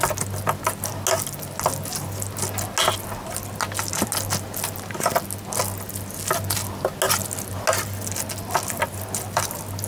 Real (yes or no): yes